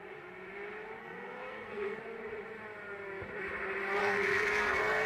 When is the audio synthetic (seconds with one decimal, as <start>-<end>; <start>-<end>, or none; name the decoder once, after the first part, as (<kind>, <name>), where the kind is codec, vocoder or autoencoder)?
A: 1.0-2.0 (codec, SNAC); 4.0-5.1